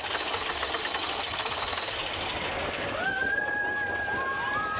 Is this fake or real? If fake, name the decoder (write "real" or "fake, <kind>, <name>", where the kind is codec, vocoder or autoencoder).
real